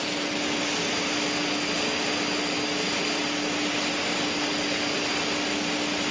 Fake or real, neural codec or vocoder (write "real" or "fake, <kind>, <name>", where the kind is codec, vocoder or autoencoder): real